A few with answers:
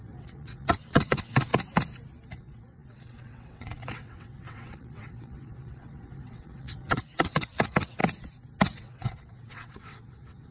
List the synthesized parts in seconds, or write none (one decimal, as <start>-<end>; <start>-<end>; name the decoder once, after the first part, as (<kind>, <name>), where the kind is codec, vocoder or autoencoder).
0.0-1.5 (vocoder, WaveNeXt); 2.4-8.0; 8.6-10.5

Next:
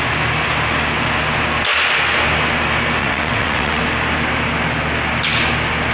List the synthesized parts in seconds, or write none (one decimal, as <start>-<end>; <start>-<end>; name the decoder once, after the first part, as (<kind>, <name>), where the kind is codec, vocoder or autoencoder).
3.0-3.8 (vocoder, WaveNeXt)

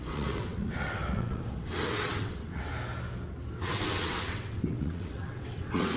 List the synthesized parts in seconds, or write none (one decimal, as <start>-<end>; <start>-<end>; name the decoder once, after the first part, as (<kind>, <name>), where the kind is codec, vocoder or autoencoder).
0.0-2.7 (vocoder, WaveNeXt); 3.5-6.0